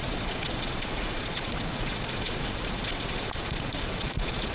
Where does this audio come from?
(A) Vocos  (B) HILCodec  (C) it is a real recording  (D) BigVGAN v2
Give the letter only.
A